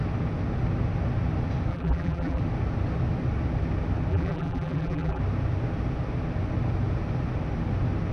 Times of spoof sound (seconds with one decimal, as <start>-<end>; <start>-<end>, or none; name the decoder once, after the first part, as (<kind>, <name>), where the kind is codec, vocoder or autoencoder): 1.7-2.4 (vocoder, BigVGAN v2); 4.1-5.2